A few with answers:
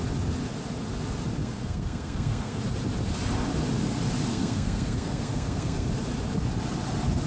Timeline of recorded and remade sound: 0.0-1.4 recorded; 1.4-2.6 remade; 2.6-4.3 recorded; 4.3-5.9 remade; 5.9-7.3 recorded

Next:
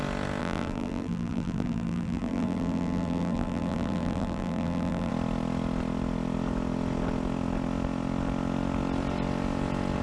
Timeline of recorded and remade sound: 0.0-0.4 recorded; 0.4-5.1 remade; 5.1-10.0 recorded

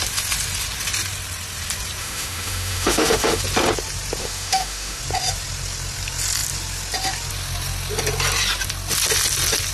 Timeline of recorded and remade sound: 0.0-2.0 recorded; 2.0-3.4 remade; 3.4-4.2 recorded; 4.2-5.0 remade; 5.0-9.7 recorded

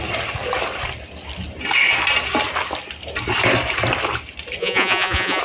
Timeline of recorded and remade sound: 0.0-4.6 recorded; 4.6-5.4 remade

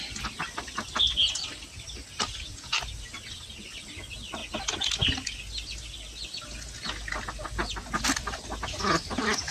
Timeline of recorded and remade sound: 0.0-9.5 recorded